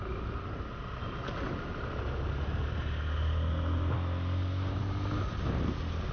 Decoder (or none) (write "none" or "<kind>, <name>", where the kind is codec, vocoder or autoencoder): none